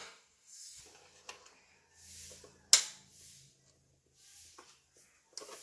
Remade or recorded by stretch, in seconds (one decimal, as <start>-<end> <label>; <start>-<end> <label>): 0.0-0.8 remade; 0.8-5.6 recorded